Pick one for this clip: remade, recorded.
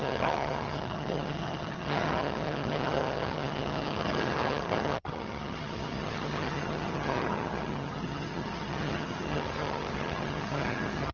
remade